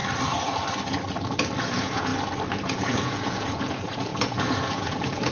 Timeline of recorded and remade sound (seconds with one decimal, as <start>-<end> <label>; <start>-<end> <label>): 0.0-1.6 recorded; 1.6-2.1 remade; 2.1-2.7 recorded; 2.7-5.3 remade

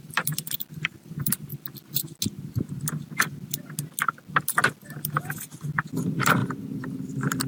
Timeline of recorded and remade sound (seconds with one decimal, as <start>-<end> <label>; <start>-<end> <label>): 0.0-1.5 remade; 1.5-6.0 recorded; 6.0-7.5 remade

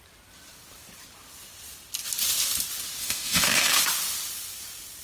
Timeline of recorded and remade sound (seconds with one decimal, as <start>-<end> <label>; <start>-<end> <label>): 0.0-3.0 recorded; 3.0-3.8 remade; 3.8-5.0 recorded